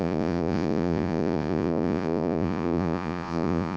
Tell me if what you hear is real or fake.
fake